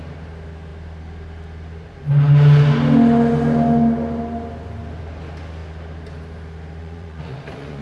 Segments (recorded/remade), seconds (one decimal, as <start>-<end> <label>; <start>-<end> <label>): 0.0-6.8 recorded; 6.8-7.8 remade